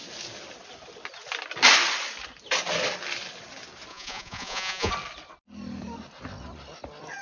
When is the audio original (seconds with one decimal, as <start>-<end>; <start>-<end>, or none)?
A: 0.0-3.9; 4.9-7.2